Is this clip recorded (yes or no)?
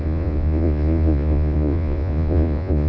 no